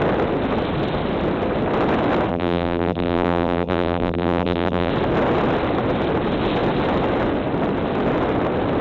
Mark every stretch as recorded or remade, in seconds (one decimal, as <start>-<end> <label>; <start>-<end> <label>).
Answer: 0.0-2.3 recorded; 2.3-4.9 remade; 4.9-8.8 recorded